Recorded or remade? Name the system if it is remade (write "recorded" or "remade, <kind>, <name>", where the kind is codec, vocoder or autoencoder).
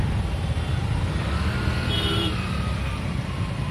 remade, vocoder, BigVGAN v2